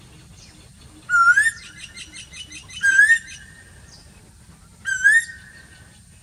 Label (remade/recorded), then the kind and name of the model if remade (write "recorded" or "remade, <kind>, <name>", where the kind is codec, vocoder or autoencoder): recorded